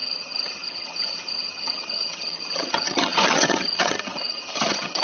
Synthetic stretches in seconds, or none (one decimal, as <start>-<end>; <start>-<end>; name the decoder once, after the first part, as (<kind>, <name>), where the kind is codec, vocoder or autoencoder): 0.0-5.0 (vocoder, HiFi-GAN)